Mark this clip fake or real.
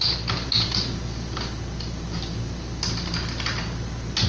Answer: real